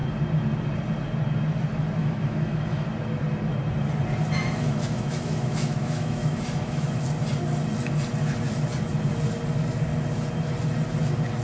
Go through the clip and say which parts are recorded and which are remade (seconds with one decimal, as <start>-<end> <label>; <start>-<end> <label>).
0.0-2.0 recorded; 2.0-2.9 remade; 2.9-4.4 recorded; 4.4-7.0 remade; 7.0-11.4 recorded